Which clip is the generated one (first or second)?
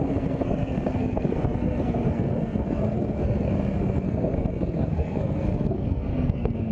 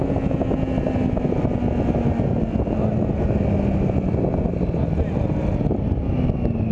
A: first